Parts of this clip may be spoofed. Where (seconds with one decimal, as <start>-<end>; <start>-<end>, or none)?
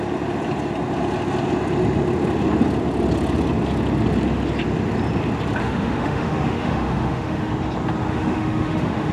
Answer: 5.6-7.5; 8.1-9.1